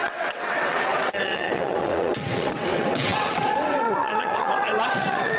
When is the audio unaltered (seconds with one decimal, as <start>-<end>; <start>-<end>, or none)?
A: none